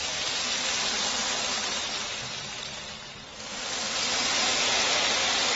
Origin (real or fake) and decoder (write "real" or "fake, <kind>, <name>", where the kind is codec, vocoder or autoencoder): real